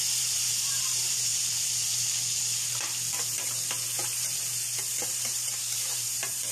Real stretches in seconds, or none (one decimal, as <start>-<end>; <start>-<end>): 1.3-5.2